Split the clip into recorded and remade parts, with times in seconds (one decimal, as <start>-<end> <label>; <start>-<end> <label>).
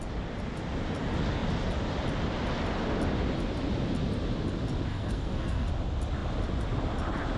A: 0.0-4.9 recorded; 4.9-5.7 remade; 5.7-7.4 recorded